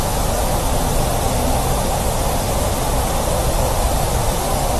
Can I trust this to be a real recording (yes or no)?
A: yes